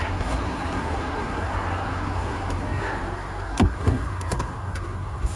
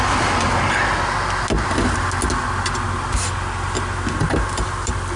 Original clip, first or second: second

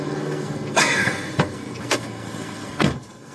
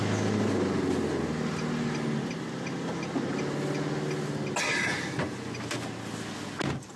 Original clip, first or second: second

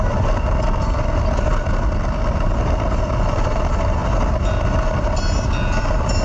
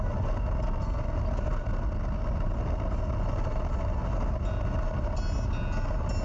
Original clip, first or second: second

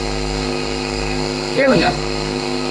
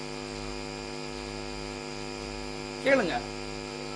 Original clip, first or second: second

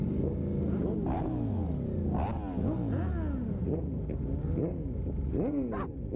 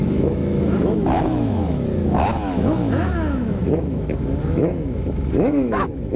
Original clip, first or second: first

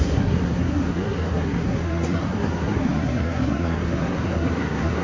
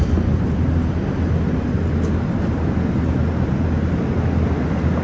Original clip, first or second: second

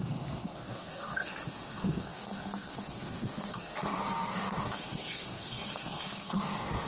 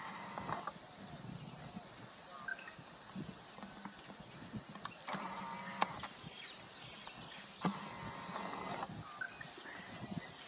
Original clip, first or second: second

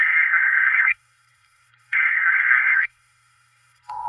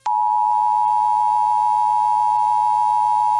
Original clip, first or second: second